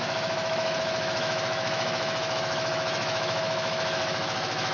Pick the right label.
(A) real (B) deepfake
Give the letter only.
B